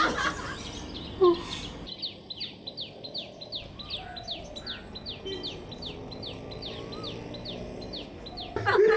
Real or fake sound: real